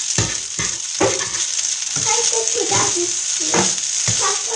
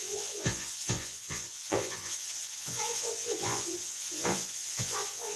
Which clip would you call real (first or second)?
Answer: first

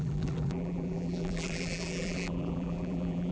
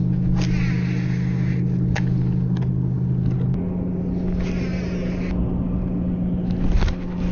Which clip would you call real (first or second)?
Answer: second